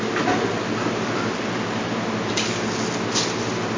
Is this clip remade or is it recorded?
recorded